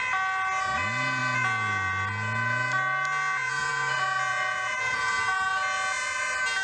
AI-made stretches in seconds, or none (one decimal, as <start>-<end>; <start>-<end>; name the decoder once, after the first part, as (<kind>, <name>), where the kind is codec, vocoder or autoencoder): 4.3-5.1 (vocoder, Vocos)